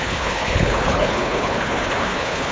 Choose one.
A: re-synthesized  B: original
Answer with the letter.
A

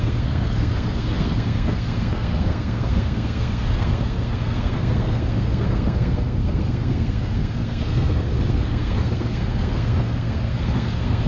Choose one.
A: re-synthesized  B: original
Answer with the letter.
A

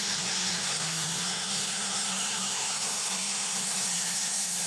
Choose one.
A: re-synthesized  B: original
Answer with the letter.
A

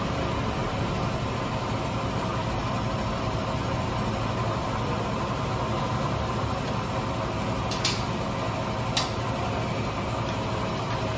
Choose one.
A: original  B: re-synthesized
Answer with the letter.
A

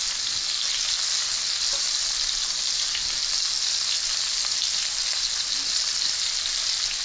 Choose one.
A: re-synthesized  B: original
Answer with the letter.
B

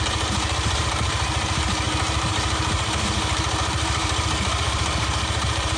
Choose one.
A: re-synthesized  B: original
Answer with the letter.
A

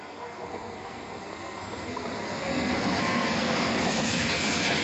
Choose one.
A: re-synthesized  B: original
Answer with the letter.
A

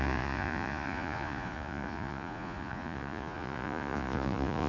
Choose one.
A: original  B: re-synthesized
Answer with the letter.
B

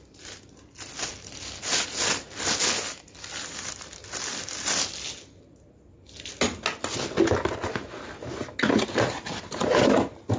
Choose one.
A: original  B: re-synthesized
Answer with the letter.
A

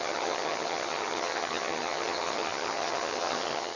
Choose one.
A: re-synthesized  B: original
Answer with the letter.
A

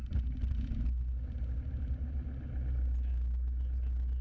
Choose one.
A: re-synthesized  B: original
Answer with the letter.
B